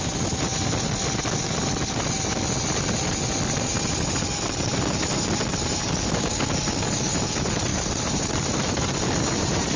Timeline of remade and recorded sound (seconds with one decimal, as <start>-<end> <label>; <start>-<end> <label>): 0.0-7.7 recorded; 7.7-9.8 remade